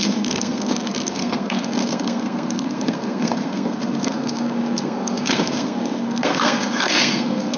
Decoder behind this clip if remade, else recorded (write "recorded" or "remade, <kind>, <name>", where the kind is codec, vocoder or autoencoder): remade, codec, SNAC